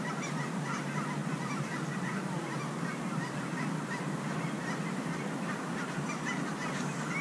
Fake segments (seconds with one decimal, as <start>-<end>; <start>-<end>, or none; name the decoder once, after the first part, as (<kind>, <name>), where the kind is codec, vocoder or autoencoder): none